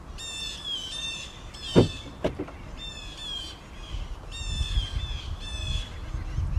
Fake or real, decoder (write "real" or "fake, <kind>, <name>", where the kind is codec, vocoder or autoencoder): real